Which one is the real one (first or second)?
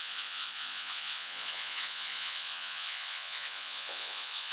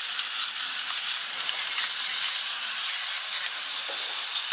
second